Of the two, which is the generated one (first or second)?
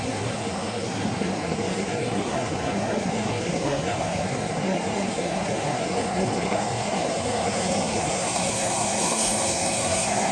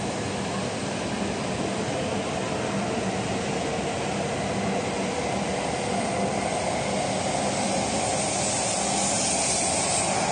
first